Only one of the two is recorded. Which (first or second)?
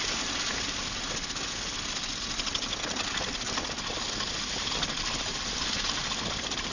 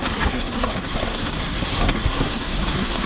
first